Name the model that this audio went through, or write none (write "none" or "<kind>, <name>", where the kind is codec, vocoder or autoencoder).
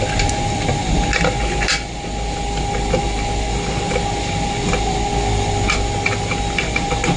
none